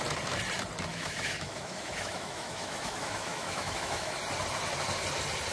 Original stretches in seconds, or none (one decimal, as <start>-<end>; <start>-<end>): 0.0-0.9; 4.2-5.5